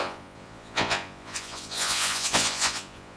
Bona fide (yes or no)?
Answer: no